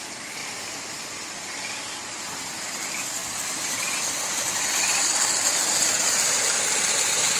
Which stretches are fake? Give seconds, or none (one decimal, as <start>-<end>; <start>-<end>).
0.0-0.4; 2.1-3.2; 6.6-7.4